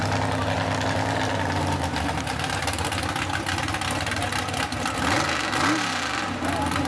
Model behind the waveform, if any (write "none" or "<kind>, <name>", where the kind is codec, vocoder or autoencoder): none